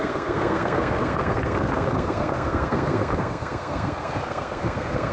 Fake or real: fake